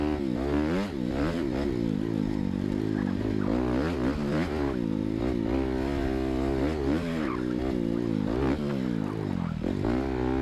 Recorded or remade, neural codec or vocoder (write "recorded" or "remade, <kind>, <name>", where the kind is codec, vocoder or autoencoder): recorded